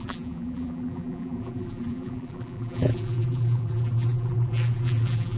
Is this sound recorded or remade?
remade